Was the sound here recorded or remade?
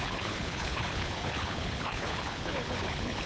remade